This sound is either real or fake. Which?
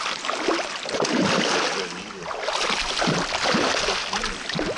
real